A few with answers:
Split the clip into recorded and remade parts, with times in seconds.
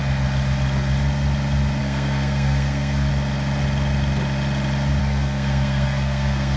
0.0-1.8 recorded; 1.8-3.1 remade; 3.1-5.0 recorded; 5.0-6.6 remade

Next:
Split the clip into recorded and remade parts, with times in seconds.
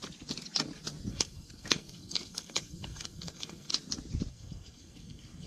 0.0-1.1 recorded; 1.1-3.7 remade; 3.7-4.3 recorded; 4.3-5.5 remade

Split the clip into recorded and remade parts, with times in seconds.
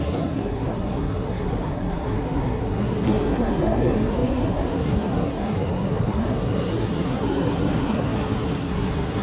0.0-9.2 remade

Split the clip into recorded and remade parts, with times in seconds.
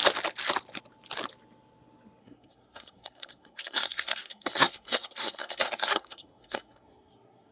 0.0-2.2 recorded; 2.2-7.5 remade